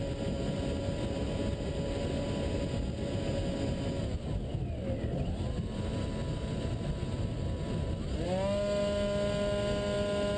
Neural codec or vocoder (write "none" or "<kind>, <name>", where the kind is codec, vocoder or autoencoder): none